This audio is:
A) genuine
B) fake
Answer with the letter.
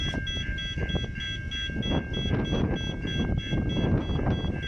A